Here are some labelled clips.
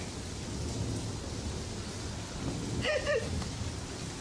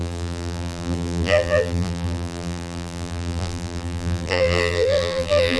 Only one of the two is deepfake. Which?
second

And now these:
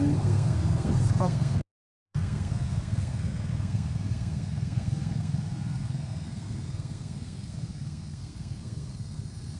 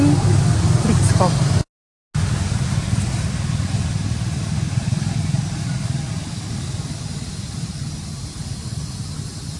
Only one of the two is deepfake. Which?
first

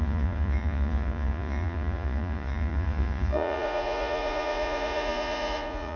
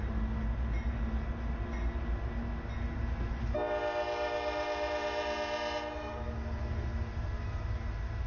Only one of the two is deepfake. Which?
first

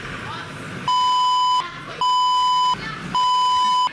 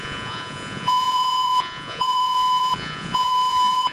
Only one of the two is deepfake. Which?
second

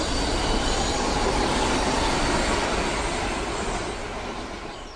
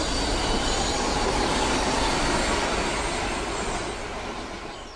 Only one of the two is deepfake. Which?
first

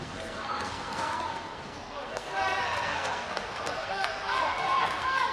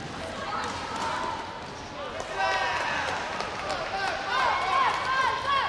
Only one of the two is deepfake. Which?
first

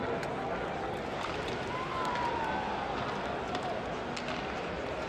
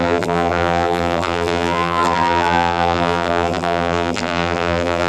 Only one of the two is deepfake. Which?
second